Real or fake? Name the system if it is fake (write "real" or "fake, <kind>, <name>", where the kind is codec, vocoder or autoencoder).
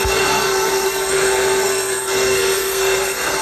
fake, codec, SNAC